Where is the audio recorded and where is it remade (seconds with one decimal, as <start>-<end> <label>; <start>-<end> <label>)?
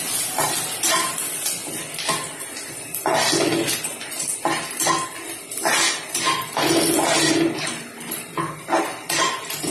0.0-9.7 recorded